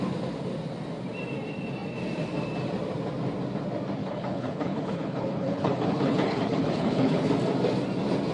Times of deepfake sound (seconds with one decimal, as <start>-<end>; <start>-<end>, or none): 4.0-7.3